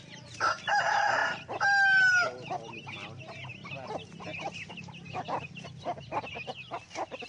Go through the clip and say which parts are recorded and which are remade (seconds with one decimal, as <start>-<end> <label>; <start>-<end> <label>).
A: 0.0-7.3 recorded